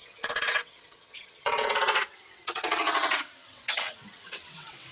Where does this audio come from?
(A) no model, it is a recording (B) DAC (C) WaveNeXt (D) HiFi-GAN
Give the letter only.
C